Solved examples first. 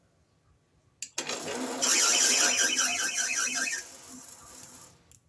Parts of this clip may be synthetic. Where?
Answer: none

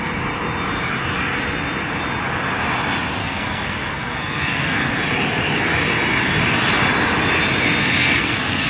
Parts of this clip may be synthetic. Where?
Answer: 3.2-4.9 (codec, SNAC); 7.8-8.7

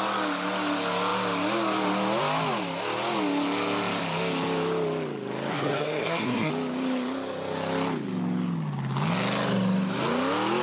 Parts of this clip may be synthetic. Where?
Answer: 5.5-6.5 (codec, SNAC)

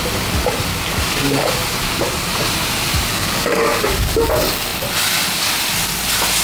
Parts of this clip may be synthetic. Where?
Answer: 0.7-1.5 (codec, DAC); 3.1-4.2

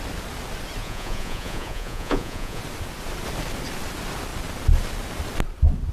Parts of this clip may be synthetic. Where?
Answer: 0.8-2.6 (vocoder, Vocos)

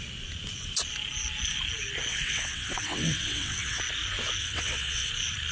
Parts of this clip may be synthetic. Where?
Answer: 2.1-3.8 (vocoder, WaveNeXt); 4.4-5.1